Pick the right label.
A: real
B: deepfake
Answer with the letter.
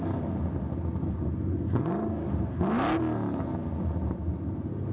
A